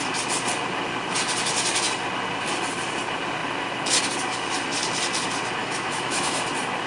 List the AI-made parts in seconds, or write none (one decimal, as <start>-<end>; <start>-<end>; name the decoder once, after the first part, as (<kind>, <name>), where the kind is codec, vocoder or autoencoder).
5.6-6.4 (autoencoder, DAC-VAE)